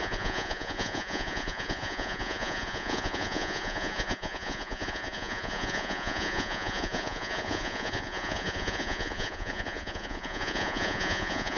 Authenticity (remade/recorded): remade